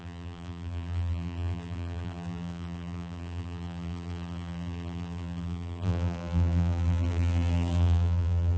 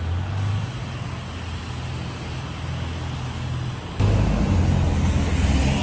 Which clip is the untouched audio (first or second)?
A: second